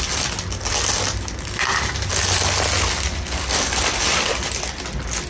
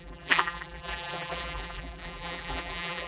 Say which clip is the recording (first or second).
first